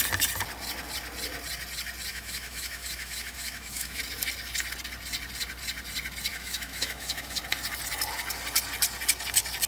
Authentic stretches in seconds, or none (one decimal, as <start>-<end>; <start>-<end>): 0.0-2.1; 4.0-6.3; 7.4-9.7